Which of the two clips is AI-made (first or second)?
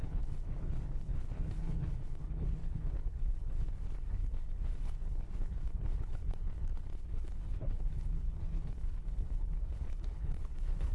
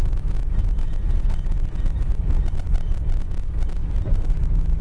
first